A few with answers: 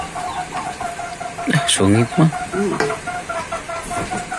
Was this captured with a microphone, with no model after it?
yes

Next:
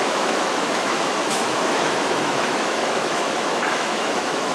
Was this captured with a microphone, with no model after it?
no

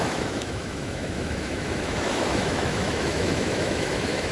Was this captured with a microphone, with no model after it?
no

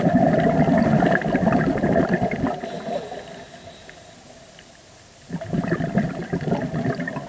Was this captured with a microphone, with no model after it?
yes